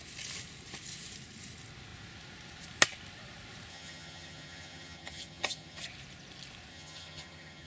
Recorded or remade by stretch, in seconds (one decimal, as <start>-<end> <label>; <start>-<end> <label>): 0.0-3.7 recorded; 3.7-5.8 remade; 5.8-6.7 recorded; 6.7-7.7 remade